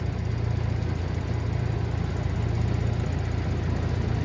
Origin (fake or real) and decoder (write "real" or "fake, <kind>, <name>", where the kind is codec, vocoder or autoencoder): real